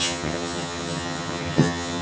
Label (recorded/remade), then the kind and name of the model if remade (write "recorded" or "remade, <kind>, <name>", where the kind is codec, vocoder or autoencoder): remade, vocoder, HiFi-GAN